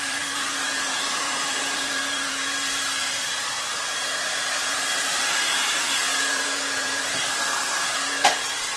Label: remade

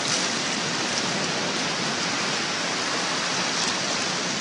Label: recorded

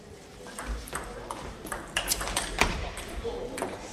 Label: remade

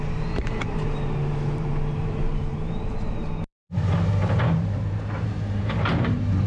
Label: remade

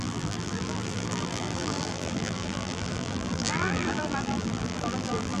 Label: remade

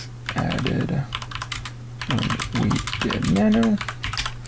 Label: recorded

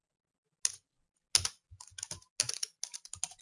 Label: recorded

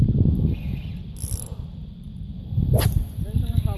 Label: recorded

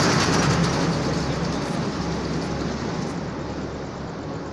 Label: recorded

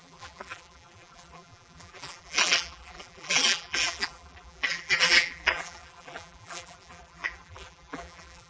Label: remade